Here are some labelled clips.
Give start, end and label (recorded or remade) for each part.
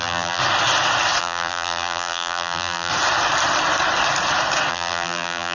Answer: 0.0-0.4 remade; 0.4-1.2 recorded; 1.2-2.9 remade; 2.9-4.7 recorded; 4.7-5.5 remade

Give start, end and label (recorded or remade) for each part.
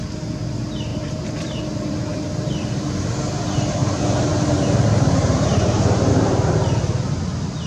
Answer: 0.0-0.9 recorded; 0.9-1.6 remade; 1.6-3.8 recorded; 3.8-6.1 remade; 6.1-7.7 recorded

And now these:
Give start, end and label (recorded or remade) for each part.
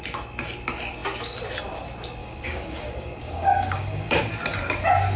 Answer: 0.0-2.2 recorded; 2.2-4.2 remade; 4.2-5.2 recorded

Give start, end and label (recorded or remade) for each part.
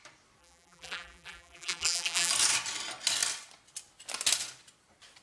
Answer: 0.0-0.4 recorded; 0.4-2.3 remade; 2.3-5.2 recorded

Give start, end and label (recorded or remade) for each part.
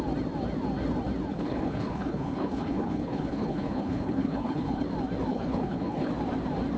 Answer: 0.0-1.3 recorded; 1.3-4.8 remade; 4.8-5.3 recorded; 5.3-6.1 remade; 6.1-6.8 recorded